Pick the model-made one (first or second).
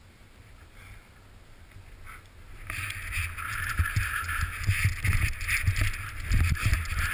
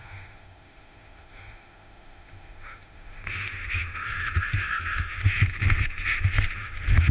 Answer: second